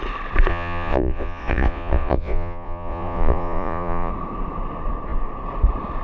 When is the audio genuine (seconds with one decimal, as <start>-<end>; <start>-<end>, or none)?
0.0-0.5; 4.1-6.0